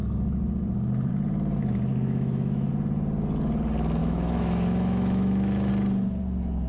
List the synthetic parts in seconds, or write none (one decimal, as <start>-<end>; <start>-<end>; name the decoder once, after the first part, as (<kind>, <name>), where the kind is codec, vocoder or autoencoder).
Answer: 1.9-2.7 (autoencoder, DAC-VAE); 4.0-5.7